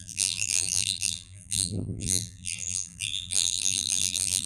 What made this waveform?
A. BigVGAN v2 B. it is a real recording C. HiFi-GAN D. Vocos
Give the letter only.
A